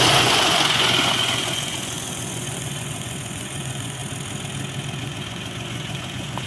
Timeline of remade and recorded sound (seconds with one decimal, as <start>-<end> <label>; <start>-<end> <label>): 0.0-4.0 remade; 4.0-5.0 recorded; 5.0-6.5 remade